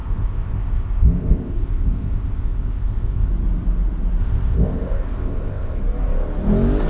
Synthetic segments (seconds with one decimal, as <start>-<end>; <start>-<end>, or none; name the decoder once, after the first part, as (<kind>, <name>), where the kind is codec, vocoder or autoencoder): 0.0-3.3 (codec, ZipCodec); 4.2-5.8